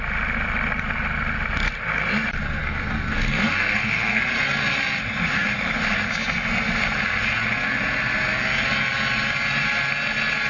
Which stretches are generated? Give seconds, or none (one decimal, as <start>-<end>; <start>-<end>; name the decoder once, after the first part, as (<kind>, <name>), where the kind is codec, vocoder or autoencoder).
2.6-4.2 (codec, SNAC)